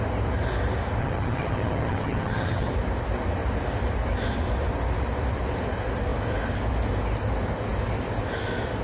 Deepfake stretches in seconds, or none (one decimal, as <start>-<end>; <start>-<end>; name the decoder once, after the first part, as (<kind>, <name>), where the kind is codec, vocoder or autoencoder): 1.0-2.7 (vocoder, HiFi-GAN)